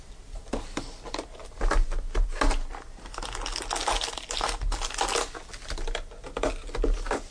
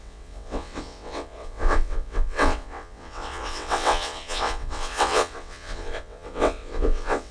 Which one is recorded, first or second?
first